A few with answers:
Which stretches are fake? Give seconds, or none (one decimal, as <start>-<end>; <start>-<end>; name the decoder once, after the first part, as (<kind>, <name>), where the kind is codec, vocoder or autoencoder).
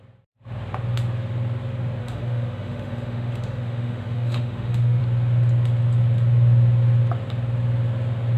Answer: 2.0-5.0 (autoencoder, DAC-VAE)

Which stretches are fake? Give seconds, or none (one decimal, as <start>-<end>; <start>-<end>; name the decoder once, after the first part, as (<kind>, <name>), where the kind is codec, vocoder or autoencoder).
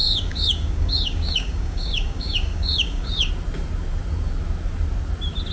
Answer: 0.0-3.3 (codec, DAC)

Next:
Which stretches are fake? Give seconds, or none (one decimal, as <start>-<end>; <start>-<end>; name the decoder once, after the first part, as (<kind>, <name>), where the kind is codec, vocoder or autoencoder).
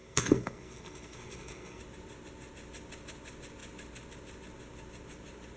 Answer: 0.0-1.8 (codec, SNAC)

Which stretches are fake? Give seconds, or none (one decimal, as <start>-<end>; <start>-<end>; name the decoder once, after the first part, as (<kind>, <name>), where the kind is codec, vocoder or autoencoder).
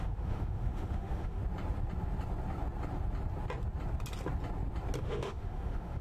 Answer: 0.0-1.4 (autoencoder, DAC-VAE); 5.0-6.0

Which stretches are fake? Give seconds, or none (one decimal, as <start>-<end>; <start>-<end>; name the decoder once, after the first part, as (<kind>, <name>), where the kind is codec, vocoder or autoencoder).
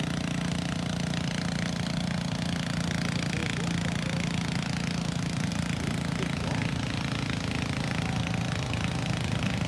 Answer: none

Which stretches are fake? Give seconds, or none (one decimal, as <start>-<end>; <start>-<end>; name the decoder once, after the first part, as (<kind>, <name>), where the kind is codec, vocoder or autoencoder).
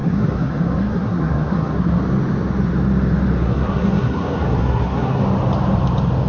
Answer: 0.0-2.0 (codec, SNAC); 3.4-5.2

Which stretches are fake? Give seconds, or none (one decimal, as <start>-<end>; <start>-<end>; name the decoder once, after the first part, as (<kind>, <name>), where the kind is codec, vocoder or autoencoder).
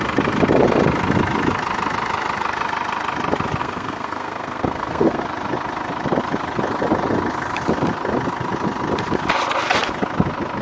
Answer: 3.6-5.2 (codec, SNAC)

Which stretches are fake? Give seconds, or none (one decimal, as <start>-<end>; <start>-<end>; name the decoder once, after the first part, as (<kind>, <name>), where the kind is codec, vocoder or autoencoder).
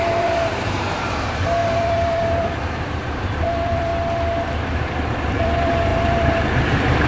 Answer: 0.0-3.9 (vocoder, BigVGAN v2); 4.7-7.1